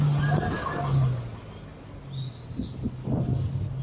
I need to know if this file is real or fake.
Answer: real